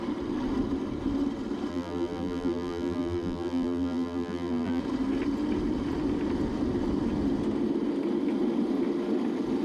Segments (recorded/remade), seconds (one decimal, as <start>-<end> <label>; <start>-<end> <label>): 0.0-1.7 recorded; 1.7-4.8 remade; 4.8-9.6 recorded